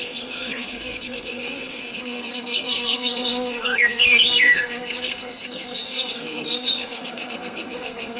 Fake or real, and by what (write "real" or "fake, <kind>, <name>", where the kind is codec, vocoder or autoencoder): fake, codec, SNAC